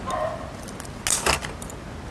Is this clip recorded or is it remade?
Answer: recorded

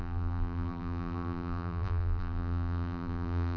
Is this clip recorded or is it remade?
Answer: remade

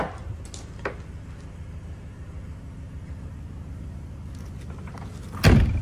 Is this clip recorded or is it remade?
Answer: recorded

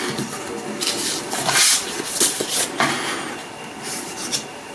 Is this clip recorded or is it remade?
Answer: recorded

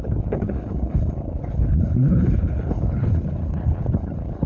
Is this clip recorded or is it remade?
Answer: remade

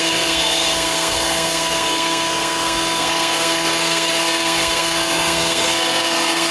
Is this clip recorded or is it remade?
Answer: remade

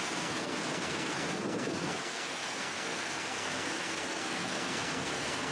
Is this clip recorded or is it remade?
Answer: remade